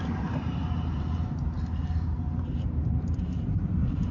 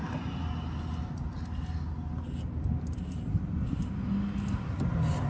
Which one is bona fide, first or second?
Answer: second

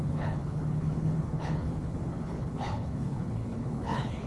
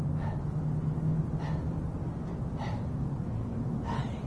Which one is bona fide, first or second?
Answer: second